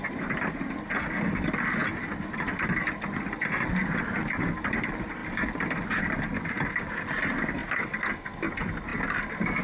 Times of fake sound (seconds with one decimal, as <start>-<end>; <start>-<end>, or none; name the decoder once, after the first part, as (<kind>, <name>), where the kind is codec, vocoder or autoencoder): none